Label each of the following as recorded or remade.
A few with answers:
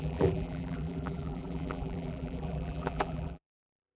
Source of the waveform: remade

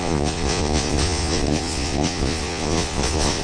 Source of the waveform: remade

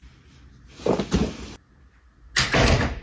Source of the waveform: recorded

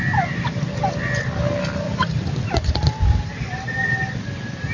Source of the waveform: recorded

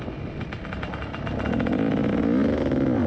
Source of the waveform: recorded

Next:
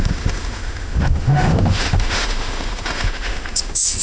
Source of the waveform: remade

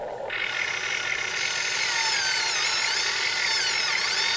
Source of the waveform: recorded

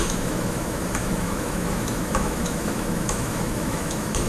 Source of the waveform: remade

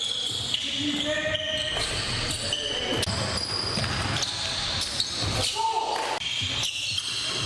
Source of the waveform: recorded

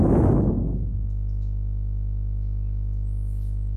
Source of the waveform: remade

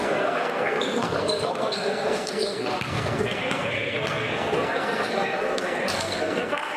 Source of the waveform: remade